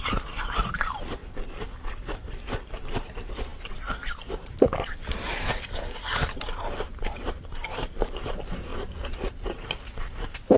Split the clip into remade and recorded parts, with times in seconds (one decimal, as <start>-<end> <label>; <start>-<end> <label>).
0.0-1.2 remade; 1.2-2.7 recorded; 2.7-8.7 remade; 8.7-9.3 recorded; 9.3-10.6 remade